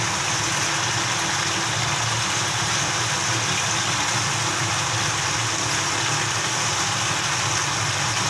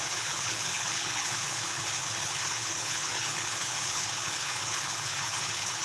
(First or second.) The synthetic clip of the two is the second